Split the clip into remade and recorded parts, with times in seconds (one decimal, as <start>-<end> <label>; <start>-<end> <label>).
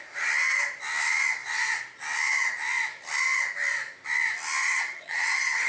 0.0-4.6 recorded; 4.6-5.7 remade